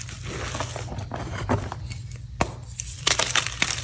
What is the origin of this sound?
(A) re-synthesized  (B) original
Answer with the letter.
B